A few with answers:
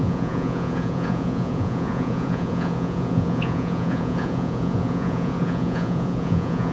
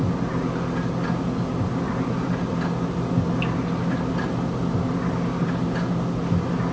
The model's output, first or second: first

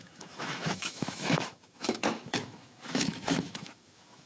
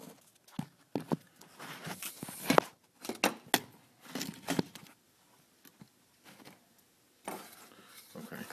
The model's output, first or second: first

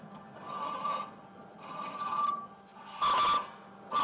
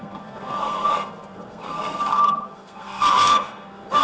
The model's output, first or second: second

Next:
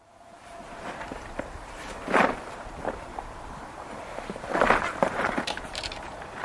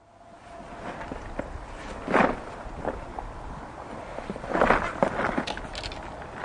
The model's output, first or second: first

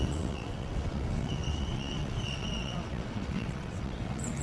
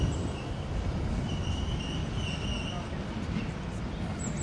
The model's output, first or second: first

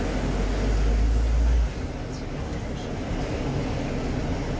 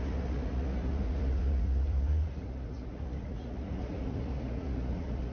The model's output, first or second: second